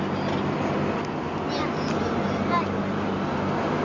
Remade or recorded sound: recorded